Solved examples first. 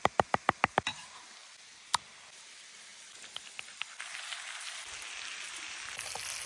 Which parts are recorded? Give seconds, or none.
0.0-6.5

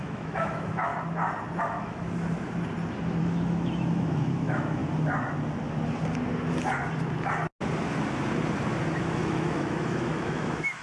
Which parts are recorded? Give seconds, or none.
0.9-1.6; 2.0-3.2; 4.8-9.0

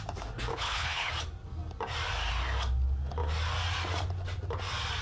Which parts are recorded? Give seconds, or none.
0.0-0.5; 1.1-5.0

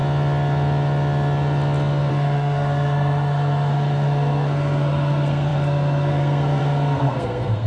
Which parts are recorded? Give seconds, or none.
0.0-2.1

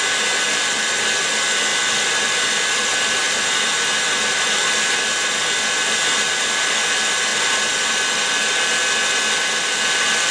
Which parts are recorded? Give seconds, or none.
0.0-1.7; 6.8-7.3; 8.0-10.3